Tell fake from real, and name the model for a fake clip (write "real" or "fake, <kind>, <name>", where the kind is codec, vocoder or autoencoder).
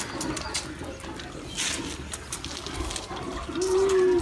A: real